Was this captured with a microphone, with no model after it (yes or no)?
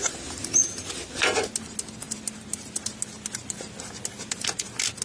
yes